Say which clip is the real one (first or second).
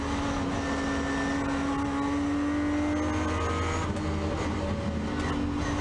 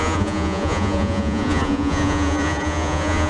first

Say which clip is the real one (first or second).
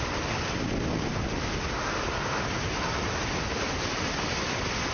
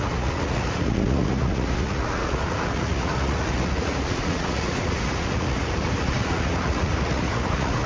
first